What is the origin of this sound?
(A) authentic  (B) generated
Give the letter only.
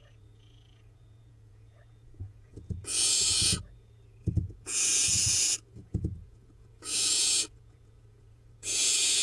B